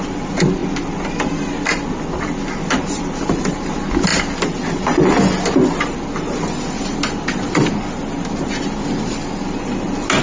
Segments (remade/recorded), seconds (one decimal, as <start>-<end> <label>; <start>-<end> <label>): 0.0-10.2 recorded

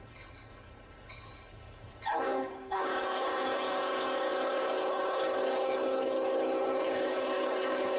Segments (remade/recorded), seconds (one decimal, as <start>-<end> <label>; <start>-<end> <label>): 0.0-8.0 remade

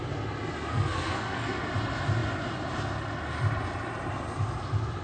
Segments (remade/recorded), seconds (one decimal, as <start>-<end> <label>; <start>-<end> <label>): 0.0-0.7 recorded; 0.7-1.6 remade; 1.6-5.0 recorded

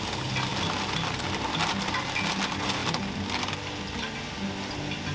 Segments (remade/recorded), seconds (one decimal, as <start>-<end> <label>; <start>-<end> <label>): 0.0-5.1 recorded

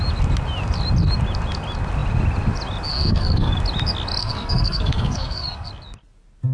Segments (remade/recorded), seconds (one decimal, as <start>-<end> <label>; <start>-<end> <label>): 0.0-2.9 recorded; 2.9-3.5 remade; 3.5-4.2 recorded; 4.2-5.7 remade; 5.7-6.5 recorded

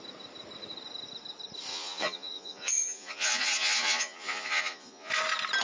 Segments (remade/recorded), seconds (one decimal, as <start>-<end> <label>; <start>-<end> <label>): 0.0-1.7 recorded; 1.7-5.1 remade; 5.1-5.6 recorded

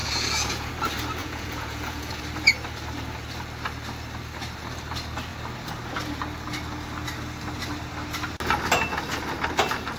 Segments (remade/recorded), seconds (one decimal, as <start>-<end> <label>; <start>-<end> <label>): 0.0-0.7 remade; 0.7-1.2 recorded; 1.2-2.2 remade; 2.2-10.0 recorded